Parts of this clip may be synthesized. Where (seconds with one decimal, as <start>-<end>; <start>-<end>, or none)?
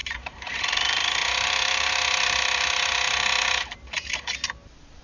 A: 0.0-0.5; 1.2-4.1